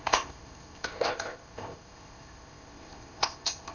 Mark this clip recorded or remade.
remade